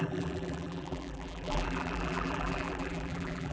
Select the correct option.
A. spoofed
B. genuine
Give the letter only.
A